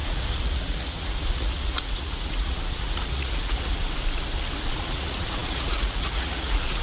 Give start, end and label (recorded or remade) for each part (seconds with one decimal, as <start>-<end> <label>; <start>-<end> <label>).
0.0-3.8 remade; 3.8-4.7 recorded; 4.7-6.8 remade